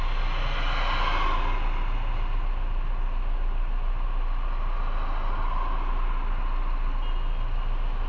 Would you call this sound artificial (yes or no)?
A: no